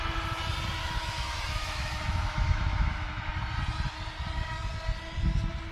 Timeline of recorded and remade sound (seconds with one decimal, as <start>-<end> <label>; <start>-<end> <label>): 0.0-0.8 recorded; 0.8-3.3 remade; 3.3-5.7 recorded